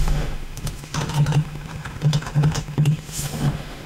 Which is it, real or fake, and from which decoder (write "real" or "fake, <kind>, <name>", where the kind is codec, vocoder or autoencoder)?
fake, autoencoder, DAC-VAE